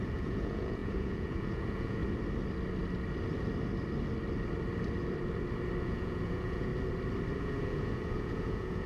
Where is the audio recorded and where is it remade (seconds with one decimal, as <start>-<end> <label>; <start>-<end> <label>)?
0.0-2.0 remade; 2.0-5.8 recorded; 5.8-6.7 remade; 6.7-7.3 recorded; 7.3-8.9 remade